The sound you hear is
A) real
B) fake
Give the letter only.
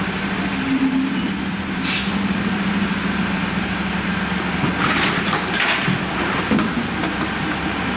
A